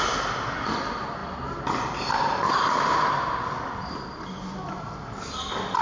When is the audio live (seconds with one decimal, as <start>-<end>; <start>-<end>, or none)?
0.0-5.8